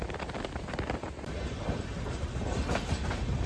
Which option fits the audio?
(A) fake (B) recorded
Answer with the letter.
B